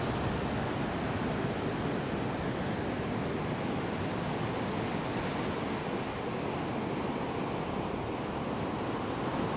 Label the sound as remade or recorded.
recorded